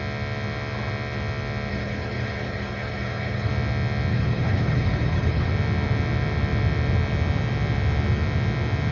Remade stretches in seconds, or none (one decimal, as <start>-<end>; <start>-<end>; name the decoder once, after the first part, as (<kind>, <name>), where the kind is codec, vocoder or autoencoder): 1.7-3.5 (codec, HILCodec); 4.1-5.5